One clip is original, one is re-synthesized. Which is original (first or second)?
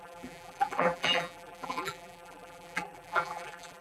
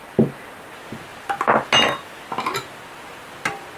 second